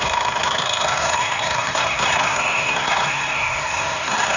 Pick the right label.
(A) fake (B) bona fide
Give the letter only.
A